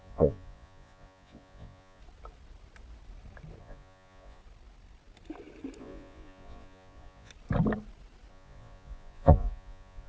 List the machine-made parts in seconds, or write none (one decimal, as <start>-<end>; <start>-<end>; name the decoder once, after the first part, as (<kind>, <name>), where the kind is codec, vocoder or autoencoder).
0.0-2.0 (vocoder, Vocos); 3.6-4.4; 5.8-7.3; 8.3-10.1